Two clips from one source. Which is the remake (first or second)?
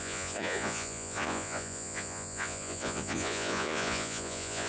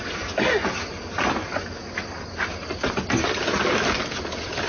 first